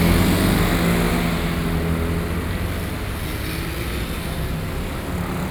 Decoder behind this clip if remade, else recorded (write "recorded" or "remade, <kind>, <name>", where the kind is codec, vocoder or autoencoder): recorded